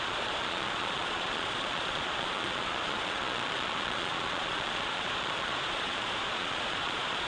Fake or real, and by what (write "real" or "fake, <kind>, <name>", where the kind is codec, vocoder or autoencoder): fake, vocoder, Vocos